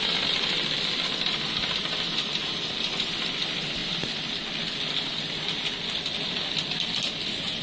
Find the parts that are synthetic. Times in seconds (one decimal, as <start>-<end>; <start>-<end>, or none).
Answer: none